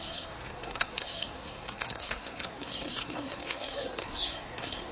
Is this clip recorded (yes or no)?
no